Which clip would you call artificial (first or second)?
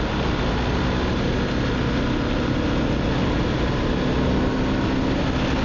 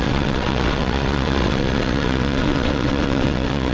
second